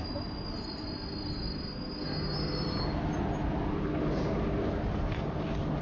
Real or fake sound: real